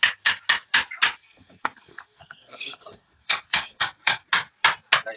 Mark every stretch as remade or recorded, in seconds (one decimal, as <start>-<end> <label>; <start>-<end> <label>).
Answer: 0.0-1.2 recorded; 1.2-4.3 remade; 4.3-5.2 recorded